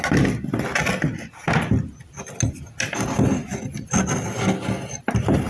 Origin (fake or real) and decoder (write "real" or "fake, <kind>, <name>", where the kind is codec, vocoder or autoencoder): real